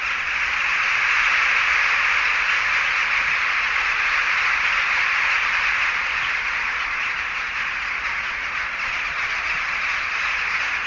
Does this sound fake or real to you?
real